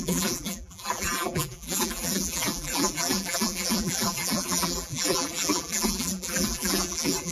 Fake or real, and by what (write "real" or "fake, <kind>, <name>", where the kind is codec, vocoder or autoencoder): fake, vocoder, BigVGAN v2